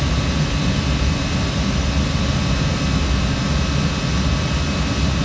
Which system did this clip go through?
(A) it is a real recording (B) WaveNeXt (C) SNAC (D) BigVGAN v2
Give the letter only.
A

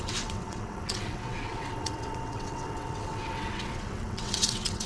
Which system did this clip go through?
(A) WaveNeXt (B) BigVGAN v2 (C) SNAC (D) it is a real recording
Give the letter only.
A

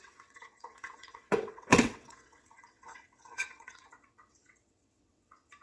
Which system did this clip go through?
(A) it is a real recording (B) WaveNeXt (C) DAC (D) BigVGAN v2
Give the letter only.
B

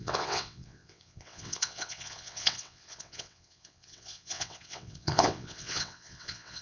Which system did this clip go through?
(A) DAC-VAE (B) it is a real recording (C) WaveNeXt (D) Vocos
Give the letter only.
C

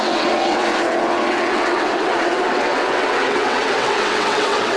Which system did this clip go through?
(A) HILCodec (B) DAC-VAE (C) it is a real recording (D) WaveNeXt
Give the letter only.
D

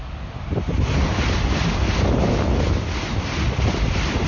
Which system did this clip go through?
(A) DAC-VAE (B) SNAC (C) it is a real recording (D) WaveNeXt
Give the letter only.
C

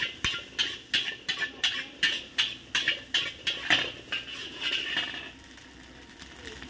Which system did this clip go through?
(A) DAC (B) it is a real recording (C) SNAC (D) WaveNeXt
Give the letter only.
B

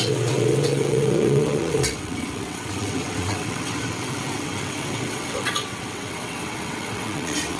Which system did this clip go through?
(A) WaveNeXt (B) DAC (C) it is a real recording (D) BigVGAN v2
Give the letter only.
A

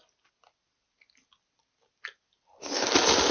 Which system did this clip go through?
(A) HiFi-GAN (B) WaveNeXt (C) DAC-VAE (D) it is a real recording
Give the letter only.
D